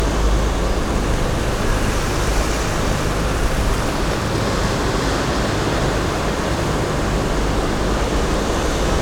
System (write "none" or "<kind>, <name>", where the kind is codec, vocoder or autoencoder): none